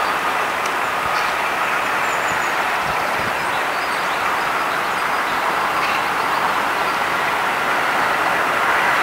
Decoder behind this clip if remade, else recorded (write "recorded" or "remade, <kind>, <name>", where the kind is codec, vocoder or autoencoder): recorded